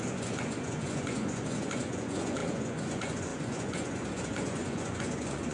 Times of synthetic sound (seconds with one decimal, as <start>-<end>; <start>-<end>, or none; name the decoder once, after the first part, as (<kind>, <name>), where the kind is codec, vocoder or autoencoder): 0.0-5.5 (vocoder, Vocos)